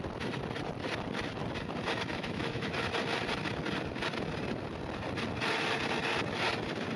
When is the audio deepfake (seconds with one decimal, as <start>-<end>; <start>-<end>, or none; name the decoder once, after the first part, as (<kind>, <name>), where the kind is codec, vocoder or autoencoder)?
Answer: 2.1-2.7 (autoencoder, DAC-VAE)

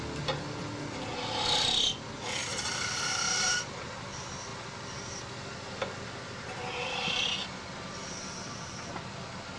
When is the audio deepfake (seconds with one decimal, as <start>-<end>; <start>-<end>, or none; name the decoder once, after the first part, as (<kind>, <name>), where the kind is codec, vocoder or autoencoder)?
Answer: 2.4-3.0 (vocoder, BigVGAN v2)

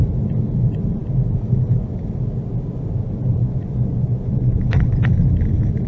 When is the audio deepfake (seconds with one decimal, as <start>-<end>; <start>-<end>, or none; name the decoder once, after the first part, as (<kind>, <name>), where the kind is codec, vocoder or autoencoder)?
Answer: 3.4-4.9 (vocoder, Vocos)

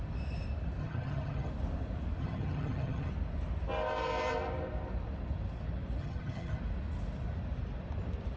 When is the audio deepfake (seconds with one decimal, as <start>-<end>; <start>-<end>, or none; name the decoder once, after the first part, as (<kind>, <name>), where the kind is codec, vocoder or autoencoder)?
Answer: 0.8-1.5 (vocoder, HiFi-GAN); 2.2-3.1; 6.0-6.6